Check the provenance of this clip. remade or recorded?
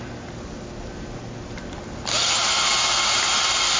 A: recorded